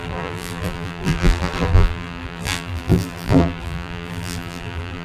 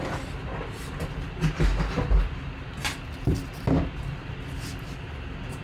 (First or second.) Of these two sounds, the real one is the second